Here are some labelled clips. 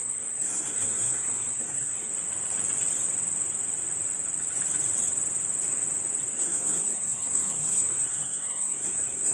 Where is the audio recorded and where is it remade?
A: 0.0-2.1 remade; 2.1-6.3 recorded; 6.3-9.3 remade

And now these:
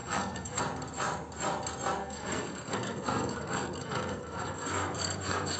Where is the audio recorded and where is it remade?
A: 0.0-0.6 remade; 0.6-2.0 recorded; 2.0-5.6 remade